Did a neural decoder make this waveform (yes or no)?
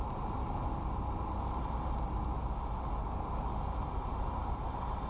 no